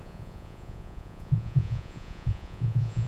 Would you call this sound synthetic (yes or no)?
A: yes